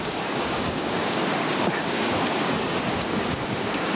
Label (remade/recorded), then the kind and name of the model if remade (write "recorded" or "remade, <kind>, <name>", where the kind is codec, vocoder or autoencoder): remade, codec, DAC